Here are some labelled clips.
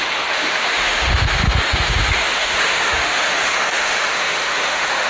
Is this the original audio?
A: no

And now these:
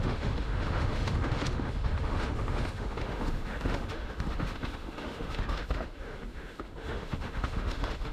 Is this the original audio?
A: no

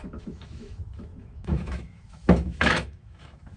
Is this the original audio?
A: no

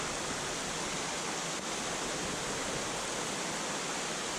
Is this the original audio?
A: yes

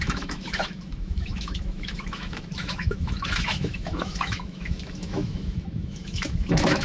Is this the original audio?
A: no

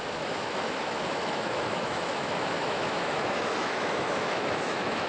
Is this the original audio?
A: no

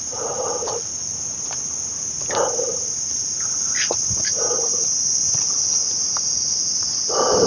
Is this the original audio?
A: yes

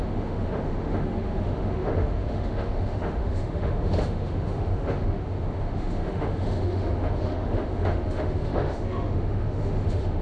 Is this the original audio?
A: no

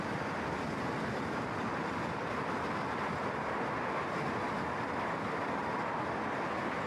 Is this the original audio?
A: yes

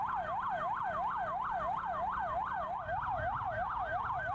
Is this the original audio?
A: yes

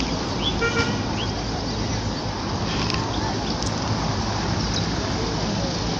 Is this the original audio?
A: yes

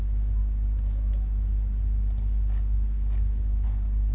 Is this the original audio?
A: yes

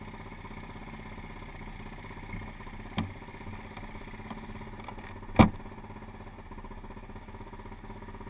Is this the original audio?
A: yes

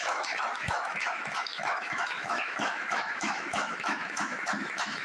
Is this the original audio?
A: no